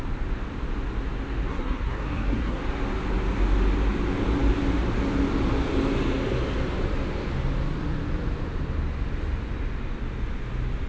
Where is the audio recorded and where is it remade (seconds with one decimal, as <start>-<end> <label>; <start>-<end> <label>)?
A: 0.0-1.5 recorded; 1.5-2.6 remade; 2.6-10.9 recorded